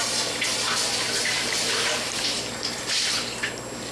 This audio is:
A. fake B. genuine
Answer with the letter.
B